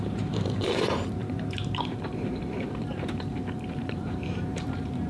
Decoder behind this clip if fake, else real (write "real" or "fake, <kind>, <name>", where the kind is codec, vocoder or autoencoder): fake, vocoder, BigVGAN v2